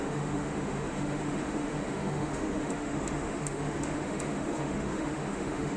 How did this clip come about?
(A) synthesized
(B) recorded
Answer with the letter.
A